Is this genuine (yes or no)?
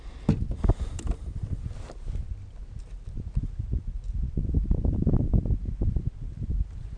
yes